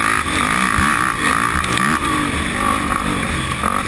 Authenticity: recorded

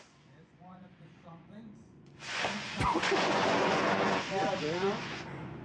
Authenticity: remade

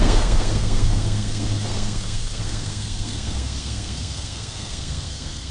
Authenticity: remade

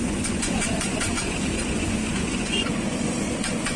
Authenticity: remade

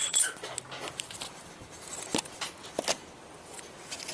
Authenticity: recorded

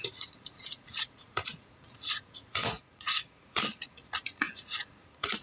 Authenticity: remade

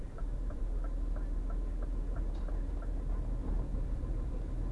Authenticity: remade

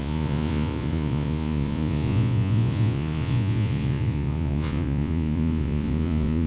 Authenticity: remade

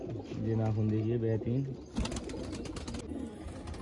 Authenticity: recorded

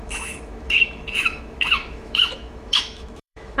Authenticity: remade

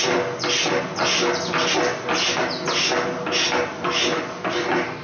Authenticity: recorded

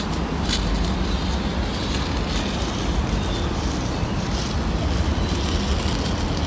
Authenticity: recorded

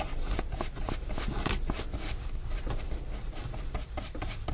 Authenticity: recorded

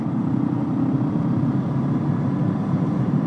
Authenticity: remade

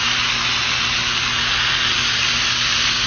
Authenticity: recorded